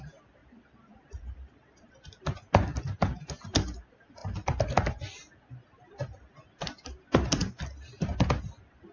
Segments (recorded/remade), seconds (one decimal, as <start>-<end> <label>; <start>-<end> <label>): 0.0-0.4 recorded; 0.4-2.2 remade; 2.2-8.9 recorded